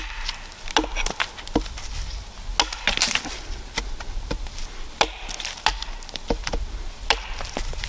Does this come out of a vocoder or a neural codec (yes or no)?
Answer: no